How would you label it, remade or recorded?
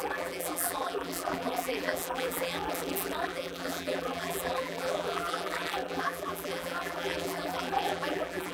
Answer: remade